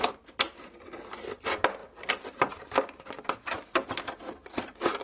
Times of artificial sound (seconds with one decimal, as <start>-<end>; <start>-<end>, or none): none